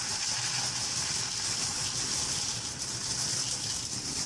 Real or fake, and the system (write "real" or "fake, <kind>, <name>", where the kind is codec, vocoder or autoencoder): real